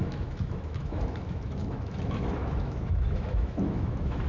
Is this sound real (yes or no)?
no